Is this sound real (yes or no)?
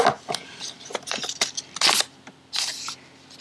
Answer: yes